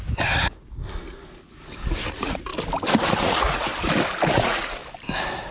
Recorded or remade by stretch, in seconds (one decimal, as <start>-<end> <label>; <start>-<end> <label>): 0.0-0.8 remade; 0.8-2.1 recorded; 2.1-2.5 remade; 2.5-3.2 recorded; 3.2-3.7 remade; 3.7-4.3 recorded; 4.3-4.8 remade; 4.8-5.5 recorded